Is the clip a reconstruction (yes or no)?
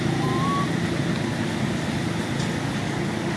no